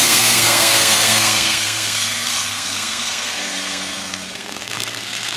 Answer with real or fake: fake